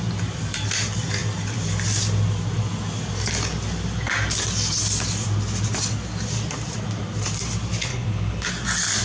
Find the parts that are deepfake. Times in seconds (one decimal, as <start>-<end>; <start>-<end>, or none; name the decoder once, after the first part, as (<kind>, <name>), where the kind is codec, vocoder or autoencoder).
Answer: 7.9-8.5 (codec, HILCodec)